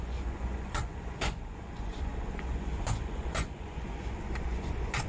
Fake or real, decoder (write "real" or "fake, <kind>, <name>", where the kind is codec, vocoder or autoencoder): fake, vocoder, Vocos